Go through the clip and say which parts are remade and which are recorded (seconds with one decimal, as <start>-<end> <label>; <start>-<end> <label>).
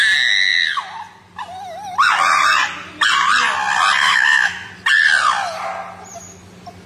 0.0-4.0 recorded; 4.0-4.7 remade; 4.7-6.9 recorded